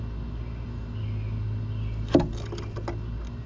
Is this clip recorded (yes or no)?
yes